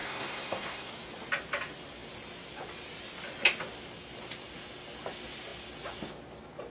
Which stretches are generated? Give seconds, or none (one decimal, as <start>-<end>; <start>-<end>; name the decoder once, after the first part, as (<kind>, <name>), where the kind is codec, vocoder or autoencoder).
0.0-0.9 (codec, SNAC)